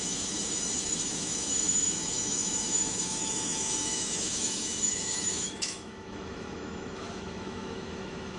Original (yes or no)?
no